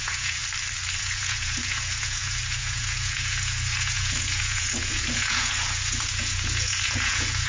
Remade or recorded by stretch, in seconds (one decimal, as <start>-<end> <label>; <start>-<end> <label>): 0.0-0.4 remade; 0.4-1.0 recorded; 1.0-7.5 remade